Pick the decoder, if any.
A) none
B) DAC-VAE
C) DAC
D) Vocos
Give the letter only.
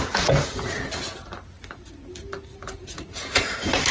A